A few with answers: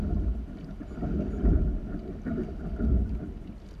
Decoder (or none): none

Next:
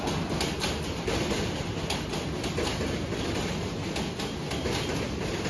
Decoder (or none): none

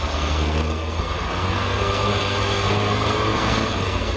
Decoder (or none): codec, SNAC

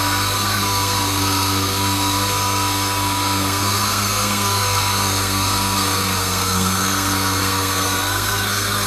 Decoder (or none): codec, SNAC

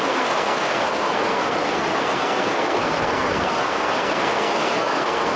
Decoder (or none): codec, SNAC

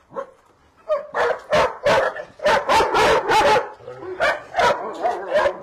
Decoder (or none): none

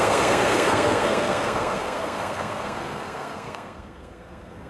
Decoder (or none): codec, SNAC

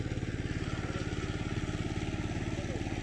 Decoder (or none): none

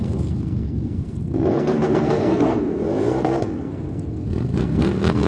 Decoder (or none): codec, SNAC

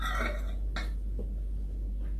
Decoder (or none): none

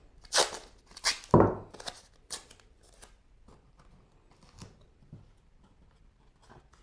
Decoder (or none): none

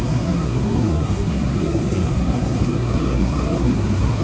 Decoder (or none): codec, SNAC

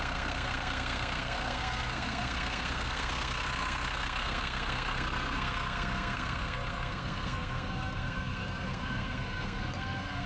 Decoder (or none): codec, SNAC